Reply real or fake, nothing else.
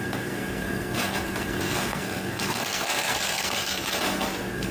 fake